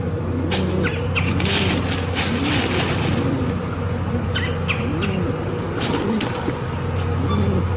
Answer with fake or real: real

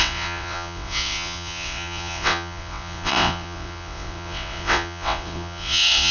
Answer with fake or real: fake